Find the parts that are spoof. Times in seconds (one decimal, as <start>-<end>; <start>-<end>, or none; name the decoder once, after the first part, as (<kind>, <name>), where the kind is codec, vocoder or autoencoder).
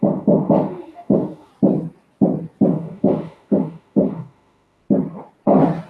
0.0-1.5 (autoencoder, DAC-VAE); 2.7-4.8